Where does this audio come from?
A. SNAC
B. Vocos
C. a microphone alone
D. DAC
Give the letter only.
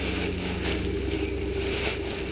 C